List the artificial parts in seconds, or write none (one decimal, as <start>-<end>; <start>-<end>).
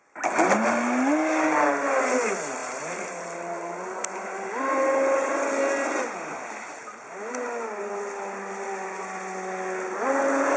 none